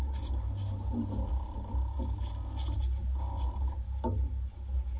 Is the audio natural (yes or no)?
yes